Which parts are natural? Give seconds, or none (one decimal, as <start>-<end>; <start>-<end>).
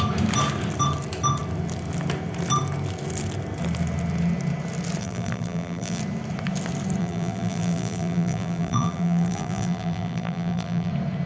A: 0.0-5.0; 6.0-7.0; 10.9-11.3